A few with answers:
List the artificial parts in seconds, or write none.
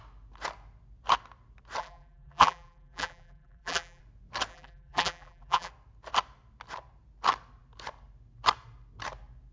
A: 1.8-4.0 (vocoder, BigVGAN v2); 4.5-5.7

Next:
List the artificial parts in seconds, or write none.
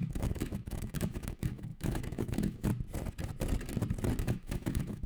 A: 0.0-2.7 (autoencoder, DAC-VAE); 4.2-5.1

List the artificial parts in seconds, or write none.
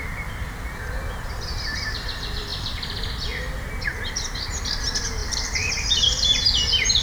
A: 2.5-3.1 (vocoder, BigVGAN v2); 3.9-4.5; 5.2-6.0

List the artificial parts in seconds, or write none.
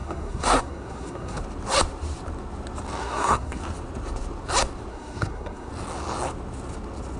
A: 0.0-1.4 (codec, SNAC); 3.0-3.6; 4.9-5.7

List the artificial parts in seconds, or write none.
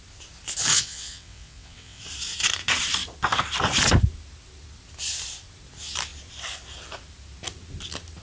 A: 0.7-2.0 (vocoder, WaveNeXt)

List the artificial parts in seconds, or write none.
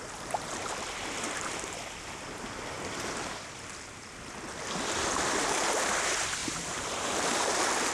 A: 6.4-7.5 (vocoder, BigVGAN v2)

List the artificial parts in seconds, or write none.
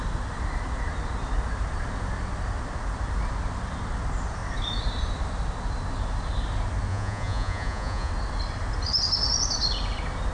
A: 6.9-8.1 (vocoder, Vocos)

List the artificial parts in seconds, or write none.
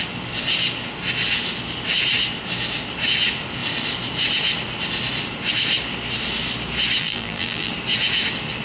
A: 7.0-7.7 (vocoder, BigVGAN v2)